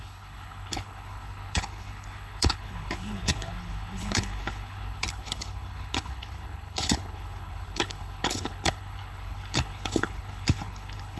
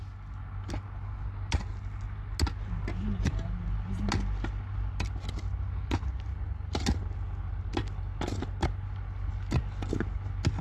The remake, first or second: first